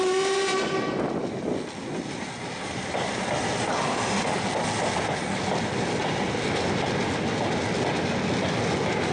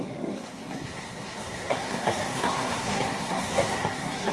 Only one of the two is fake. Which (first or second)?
second